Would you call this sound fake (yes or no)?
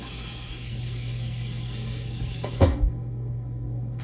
yes